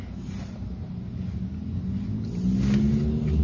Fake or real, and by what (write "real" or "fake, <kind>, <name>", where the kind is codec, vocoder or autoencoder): real